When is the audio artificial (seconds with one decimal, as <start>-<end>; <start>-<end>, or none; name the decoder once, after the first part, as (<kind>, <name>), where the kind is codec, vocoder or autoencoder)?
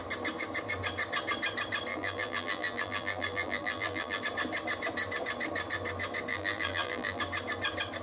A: 1.9-4.2 (vocoder, BigVGAN v2); 6.3-7.2